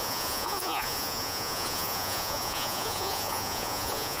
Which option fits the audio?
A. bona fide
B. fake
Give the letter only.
B